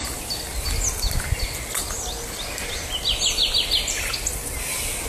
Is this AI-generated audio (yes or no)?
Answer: no